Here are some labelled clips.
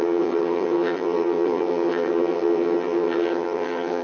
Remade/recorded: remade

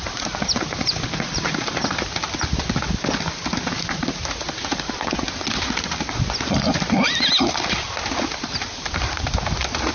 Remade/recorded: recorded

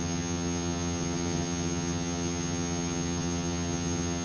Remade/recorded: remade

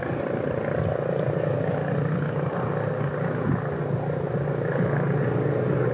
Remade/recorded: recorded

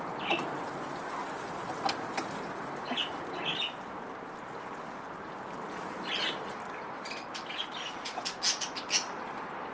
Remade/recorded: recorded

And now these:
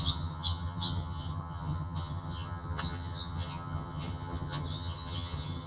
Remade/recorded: remade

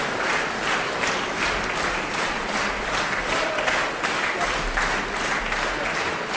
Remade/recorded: recorded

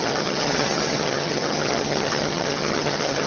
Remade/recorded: remade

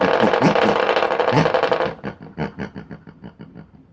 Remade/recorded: recorded